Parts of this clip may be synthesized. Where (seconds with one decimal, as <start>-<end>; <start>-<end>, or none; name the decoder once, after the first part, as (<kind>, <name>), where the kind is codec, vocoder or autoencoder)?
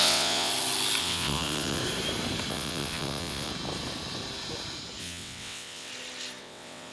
0.0-0.5 (vocoder, WaveNeXt); 1.0-1.8; 2.5-3.5; 5.0-5.9; 6.4-6.9